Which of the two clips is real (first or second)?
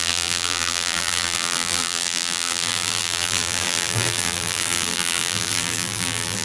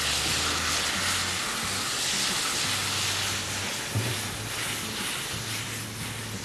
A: second